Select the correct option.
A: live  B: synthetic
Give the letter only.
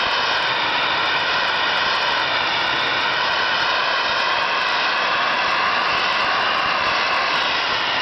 A